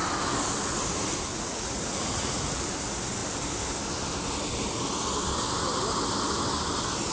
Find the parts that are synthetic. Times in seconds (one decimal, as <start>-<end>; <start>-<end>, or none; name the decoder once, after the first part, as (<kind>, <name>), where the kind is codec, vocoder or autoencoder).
1.3-2.6 (vocoder, Vocos)